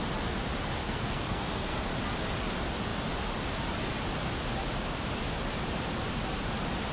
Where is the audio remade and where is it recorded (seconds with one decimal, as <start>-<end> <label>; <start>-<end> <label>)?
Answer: 0.0-0.8 recorded; 0.8-1.9 remade; 1.9-6.9 recorded